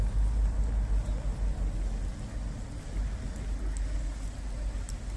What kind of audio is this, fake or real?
real